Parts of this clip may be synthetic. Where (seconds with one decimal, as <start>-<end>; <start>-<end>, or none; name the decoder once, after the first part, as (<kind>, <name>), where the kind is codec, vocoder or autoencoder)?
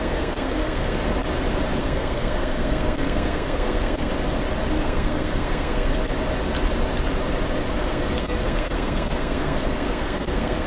0.0-1.0 (codec, SNAC); 1.8-4.1; 4.8-5.9; 7.7-10.7